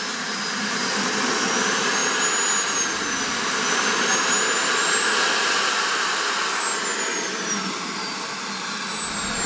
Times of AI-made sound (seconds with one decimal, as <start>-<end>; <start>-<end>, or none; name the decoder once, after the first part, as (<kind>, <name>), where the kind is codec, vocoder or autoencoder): none